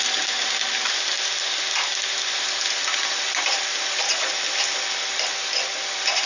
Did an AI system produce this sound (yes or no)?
no